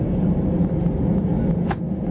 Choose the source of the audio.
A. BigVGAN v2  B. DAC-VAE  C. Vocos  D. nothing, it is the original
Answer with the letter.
D